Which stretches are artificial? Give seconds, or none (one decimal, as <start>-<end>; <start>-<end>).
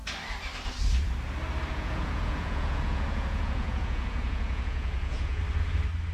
1.7-5.4